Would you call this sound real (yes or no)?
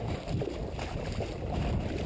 yes